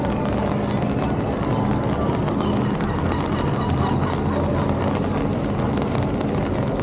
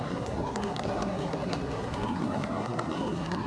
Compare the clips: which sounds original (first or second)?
first